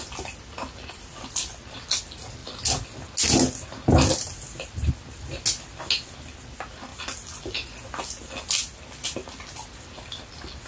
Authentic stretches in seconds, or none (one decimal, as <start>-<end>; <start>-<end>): 0.0-10.7

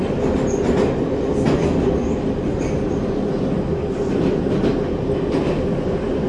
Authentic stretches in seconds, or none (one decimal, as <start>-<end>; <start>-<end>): 0.0-6.3

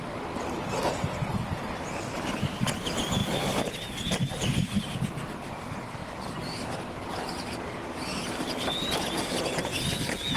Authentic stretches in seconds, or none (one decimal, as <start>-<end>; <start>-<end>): 0.0-10.4

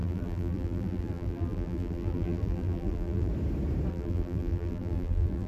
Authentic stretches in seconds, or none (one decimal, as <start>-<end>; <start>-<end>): 3.3-3.9

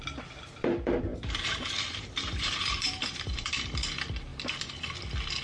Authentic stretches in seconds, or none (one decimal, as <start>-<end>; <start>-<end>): 0.0-1.1; 3.5-5.4